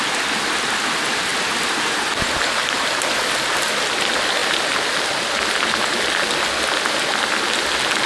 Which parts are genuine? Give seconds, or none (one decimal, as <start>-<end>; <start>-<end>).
0.0-8.1

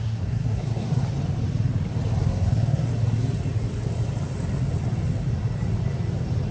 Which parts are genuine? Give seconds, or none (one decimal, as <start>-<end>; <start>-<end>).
1.0-2.2; 2.9-6.5

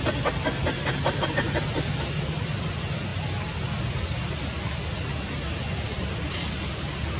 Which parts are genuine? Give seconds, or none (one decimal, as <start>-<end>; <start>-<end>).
0.0-7.2

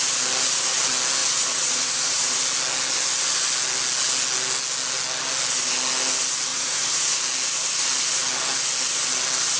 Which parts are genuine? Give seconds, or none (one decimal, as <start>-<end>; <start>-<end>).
0.0-1.2; 2.4-6.5; 7.2-9.6